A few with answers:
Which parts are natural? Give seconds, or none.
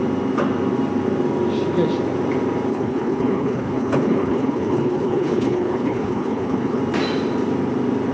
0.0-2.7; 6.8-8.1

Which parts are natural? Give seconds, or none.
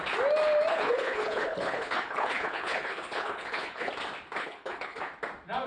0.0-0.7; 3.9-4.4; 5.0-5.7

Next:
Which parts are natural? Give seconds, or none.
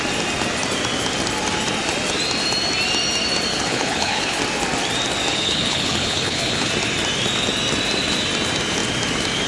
0.0-3.5; 4.4-5.3; 6.7-9.5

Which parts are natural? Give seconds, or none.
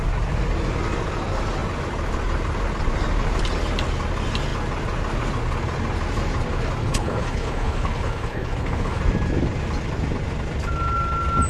0.0-6.8; 9.0-11.5